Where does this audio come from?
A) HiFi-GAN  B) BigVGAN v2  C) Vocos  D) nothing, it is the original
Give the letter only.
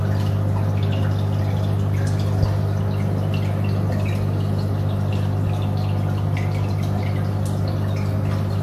D